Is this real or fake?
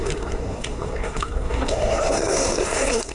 fake